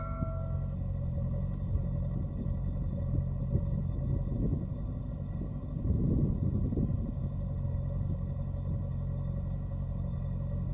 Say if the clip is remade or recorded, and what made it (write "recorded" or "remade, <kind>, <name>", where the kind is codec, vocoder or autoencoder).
remade, autoencoder, DAC-VAE